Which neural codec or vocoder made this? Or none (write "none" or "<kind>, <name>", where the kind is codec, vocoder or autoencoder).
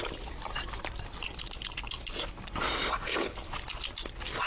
none